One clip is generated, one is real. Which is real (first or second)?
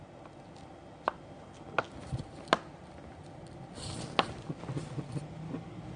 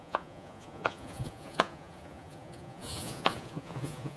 first